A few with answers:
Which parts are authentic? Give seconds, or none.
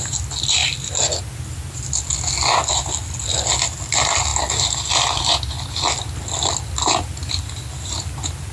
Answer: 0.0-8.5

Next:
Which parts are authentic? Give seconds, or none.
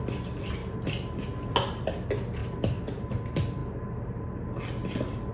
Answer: 0.0-0.6; 1.2-3.6; 4.2-5.3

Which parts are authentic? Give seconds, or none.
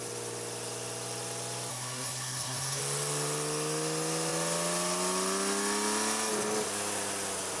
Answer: 0.0-1.7; 2.8-7.6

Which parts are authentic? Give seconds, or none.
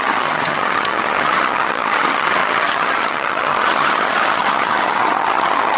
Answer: none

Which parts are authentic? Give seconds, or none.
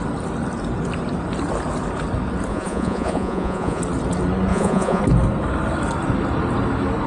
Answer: 0.0-2.5; 3.8-4.5; 5.0-7.1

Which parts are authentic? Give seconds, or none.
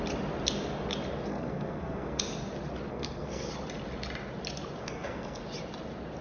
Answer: 0.0-1.3; 2.2-2.9; 3.5-4.8; 5.4-6.2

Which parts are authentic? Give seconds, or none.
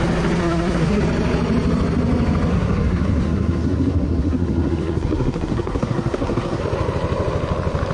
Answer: 0.0-0.4; 1.0-2.5; 6.6-7.9